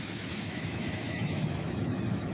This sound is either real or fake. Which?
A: fake